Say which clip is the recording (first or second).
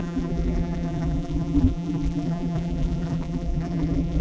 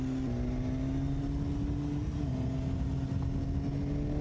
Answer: second